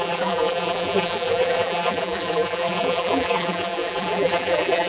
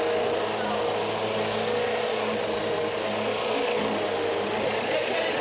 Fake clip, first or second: first